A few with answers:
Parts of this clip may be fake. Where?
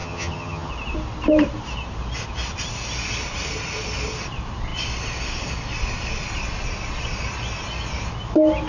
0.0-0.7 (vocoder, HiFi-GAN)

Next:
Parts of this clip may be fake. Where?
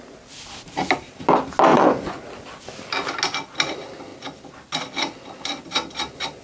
1.7-2.2 (vocoder, Vocos)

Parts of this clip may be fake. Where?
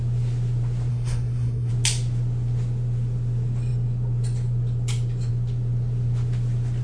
0.9-1.7 (codec, SNAC)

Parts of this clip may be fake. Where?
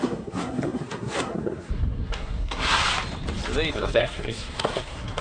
0.0-2.8 (codec, SNAC); 3.7-5.2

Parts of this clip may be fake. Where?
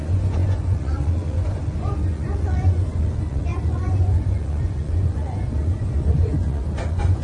0.0-7.2 (vocoder, Vocos)